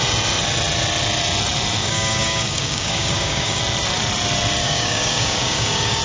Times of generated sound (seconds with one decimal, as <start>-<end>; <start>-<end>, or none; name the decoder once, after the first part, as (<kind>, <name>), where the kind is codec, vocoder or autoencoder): 1.8-3.6 (codec, DAC); 4.6-6.0